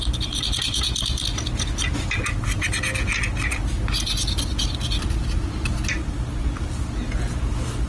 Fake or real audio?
real